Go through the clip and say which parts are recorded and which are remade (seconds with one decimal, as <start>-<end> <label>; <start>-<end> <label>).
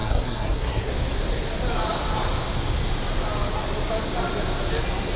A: 0.0-0.9 remade; 0.9-5.2 recorded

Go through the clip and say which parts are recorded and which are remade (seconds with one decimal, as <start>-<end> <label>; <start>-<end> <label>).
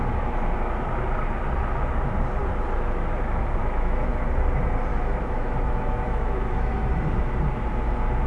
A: 0.0-3.6 recorded; 3.6-4.1 remade; 4.1-4.9 recorded; 4.9-6.7 remade; 6.7-8.3 recorded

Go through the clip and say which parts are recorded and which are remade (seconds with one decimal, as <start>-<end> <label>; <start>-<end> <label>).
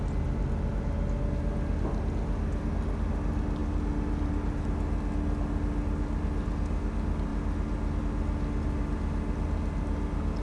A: 0.0-10.4 recorded